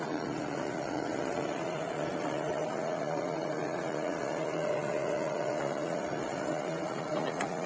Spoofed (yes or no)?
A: yes